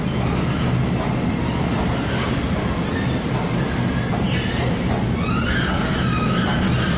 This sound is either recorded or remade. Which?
recorded